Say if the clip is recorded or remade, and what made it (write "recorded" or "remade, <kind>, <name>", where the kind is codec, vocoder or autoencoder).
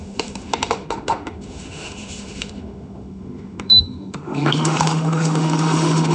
remade, autoencoder, DAC-VAE